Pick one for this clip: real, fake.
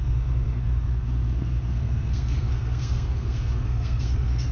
fake